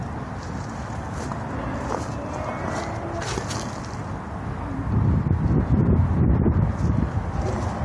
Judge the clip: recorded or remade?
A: recorded